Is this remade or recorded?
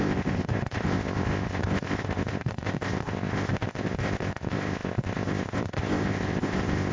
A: remade